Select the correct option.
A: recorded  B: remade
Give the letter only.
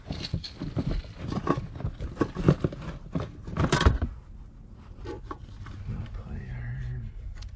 A